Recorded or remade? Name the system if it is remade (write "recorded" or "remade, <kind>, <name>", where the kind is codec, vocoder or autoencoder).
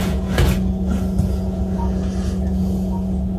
remade, vocoder, Vocos